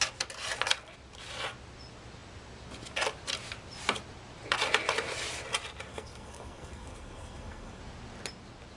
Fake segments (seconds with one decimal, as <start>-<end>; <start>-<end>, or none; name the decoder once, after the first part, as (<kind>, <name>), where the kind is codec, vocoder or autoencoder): 5.9-7.8 (codec, SNAC)